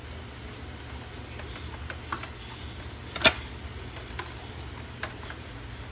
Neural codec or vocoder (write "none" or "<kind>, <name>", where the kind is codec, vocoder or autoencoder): none